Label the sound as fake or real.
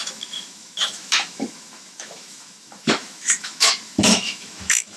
fake